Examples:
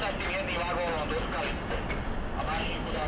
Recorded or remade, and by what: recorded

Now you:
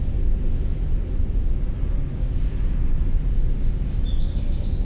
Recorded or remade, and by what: recorded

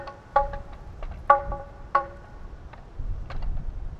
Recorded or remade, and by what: remade, vocoder, BigVGAN v2